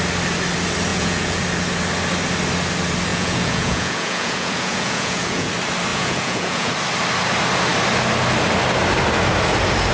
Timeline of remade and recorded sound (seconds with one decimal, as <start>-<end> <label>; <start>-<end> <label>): 0.0-0.9 recorded; 0.9-1.4 remade; 1.4-3.1 recorded; 3.1-5.5 remade; 5.5-5.9 recorded; 5.9-6.7 remade; 6.7-9.9 recorded